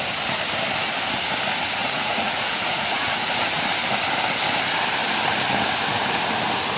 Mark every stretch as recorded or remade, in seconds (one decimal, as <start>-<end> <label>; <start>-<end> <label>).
0.0-1.8 recorded; 1.8-3.6 remade; 3.6-6.8 recorded